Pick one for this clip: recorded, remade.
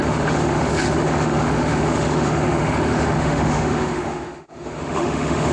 remade